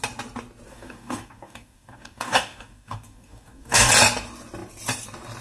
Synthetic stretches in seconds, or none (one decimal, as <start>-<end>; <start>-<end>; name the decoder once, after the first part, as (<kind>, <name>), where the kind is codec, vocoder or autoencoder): 0.7-3.9 (codec, DAC)